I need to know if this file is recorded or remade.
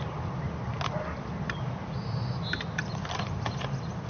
recorded